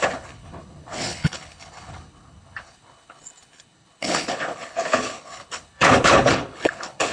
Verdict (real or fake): fake